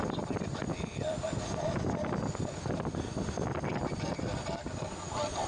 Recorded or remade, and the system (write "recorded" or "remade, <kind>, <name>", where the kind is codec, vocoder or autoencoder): recorded